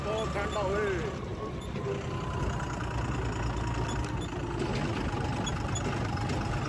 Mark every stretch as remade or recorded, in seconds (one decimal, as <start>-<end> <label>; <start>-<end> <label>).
0.0-6.7 recorded